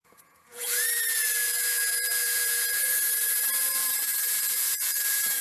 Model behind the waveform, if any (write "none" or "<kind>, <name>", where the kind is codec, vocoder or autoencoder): vocoder, Vocos